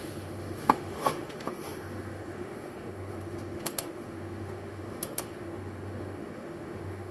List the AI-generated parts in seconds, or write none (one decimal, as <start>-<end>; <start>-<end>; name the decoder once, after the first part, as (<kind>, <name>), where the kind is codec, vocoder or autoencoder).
0.0-7.1 (autoencoder, DAC-VAE)